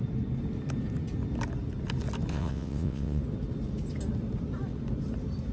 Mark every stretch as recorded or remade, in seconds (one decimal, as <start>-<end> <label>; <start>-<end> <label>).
0.0-2.3 recorded; 2.3-3.2 remade; 3.2-5.5 recorded